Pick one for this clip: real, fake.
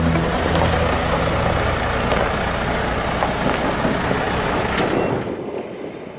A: real